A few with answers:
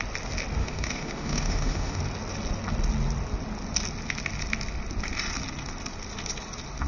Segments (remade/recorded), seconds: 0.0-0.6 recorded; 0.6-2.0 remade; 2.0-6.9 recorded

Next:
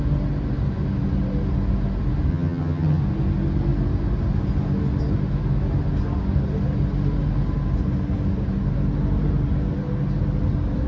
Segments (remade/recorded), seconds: 0.0-2.3 recorded; 2.3-3.0 remade; 3.0-10.9 recorded

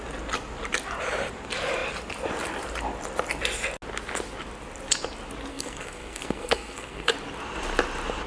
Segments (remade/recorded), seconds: 0.0-5.5 recorded; 5.5-7.1 remade; 7.1-8.3 recorded

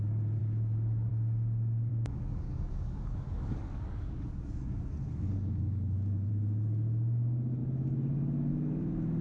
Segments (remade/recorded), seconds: 0.0-0.4 recorded; 0.4-1.1 remade; 1.1-1.9 recorded; 1.9-6.3 remade; 6.3-9.2 recorded

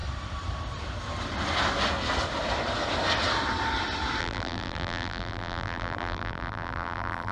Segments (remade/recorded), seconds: 0.0-4.2 recorded; 4.2-7.3 remade

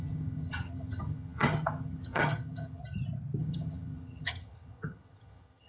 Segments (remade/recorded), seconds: 0.0-2.8 remade; 2.8-3.4 recorded; 3.4-5.7 remade

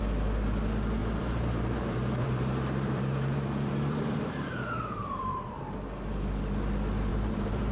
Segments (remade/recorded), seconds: 0.0-1.0 recorded; 1.0-5.6 remade; 5.6-7.1 recorded; 7.1-7.7 remade

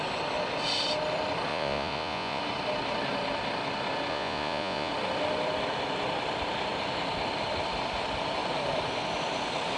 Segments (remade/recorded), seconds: 0.0-1.5 recorded; 1.5-2.4 remade; 2.4-4.1 recorded; 4.1-4.9 remade; 4.9-9.8 recorded